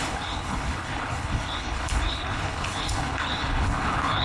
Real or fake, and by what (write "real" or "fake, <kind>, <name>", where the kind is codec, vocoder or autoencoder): fake, codec, HILCodec